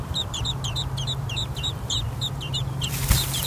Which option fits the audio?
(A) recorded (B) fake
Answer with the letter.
B